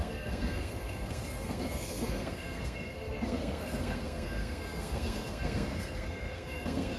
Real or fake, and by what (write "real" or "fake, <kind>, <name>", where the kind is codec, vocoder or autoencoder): fake, codec, SNAC